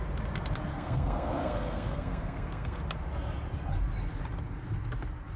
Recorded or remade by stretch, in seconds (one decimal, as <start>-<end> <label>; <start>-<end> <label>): 0.0-0.7 recorded; 0.7-2.8 remade; 2.8-5.4 recorded